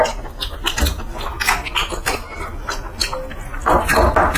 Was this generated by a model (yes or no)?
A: no